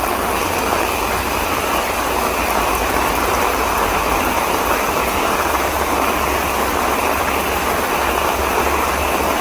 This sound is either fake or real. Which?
real